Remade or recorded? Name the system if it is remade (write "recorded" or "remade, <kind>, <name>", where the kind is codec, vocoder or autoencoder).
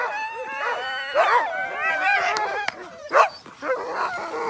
recorded